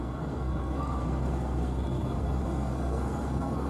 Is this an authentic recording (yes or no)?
no